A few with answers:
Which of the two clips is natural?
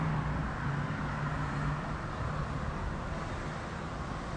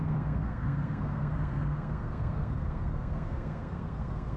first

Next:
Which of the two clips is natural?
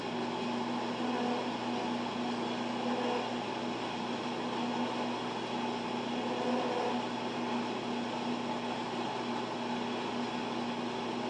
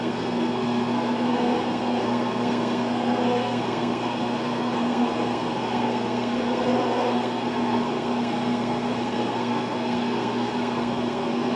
first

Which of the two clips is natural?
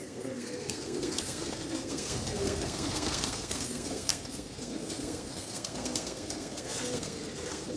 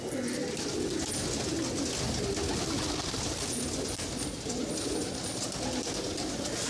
second